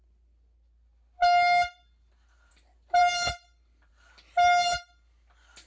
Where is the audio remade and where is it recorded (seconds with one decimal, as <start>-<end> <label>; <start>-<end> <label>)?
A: 0.0-5.7 recorded